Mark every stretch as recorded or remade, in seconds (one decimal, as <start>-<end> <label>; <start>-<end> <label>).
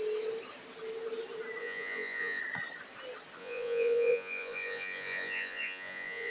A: 0.0-1.6 recorded; 1.6-2.4 remade; 2.4-3.4 recorded; 3.4-6.3 remade